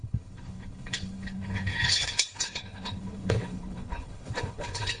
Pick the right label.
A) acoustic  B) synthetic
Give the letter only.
B